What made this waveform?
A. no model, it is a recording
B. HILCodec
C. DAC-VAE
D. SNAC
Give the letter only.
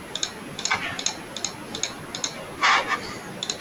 A